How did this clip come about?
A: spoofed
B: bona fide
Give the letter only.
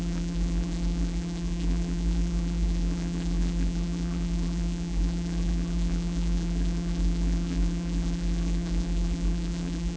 A